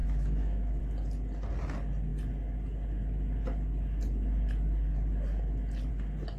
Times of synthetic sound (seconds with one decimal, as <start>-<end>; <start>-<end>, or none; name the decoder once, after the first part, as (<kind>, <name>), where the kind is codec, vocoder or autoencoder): 0.0-0.8 (autoencoder, DAC-VAE)